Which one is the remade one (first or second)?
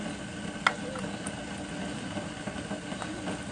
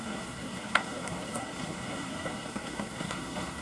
second